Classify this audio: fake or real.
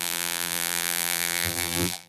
fake